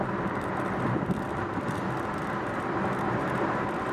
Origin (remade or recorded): recorded